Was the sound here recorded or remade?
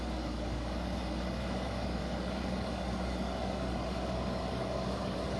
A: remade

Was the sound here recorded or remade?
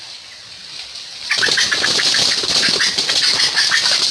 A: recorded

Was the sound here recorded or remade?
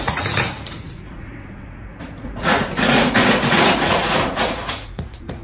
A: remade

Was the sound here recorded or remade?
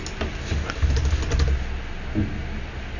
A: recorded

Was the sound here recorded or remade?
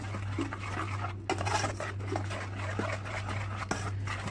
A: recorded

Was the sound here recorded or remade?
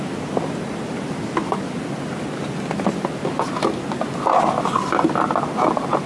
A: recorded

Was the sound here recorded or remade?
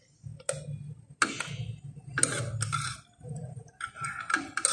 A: recorded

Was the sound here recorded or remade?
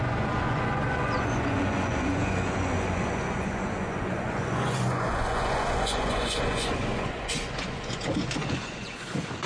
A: remade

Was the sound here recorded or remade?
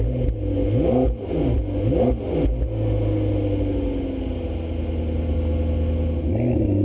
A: recorded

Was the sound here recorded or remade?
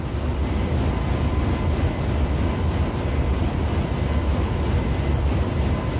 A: recorded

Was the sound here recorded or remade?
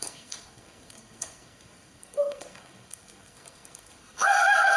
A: remade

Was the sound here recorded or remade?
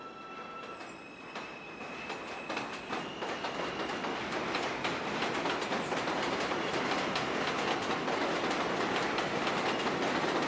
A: recorded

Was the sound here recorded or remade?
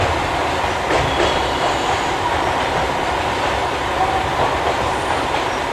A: recorded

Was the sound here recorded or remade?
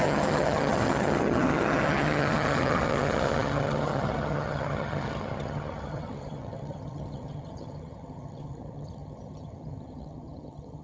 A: remade